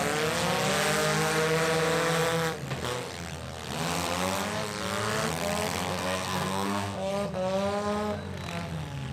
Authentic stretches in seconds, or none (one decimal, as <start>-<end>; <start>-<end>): 0.0-5.9; 7.1-9.1